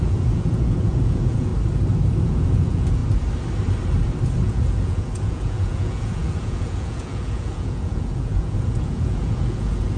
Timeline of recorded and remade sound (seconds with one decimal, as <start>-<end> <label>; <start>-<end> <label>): 0.0-1.5 remade; 1.5-2.2 recorded; 2.2-3.0 remade; 3.0-4.4 recorded; 4.4-10.0 remade